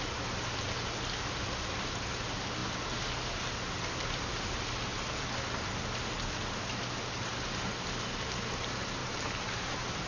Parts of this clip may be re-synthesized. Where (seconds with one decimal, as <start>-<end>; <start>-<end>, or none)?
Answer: 9.0-10.1